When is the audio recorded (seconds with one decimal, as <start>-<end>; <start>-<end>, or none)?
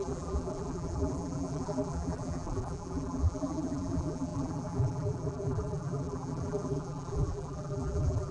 none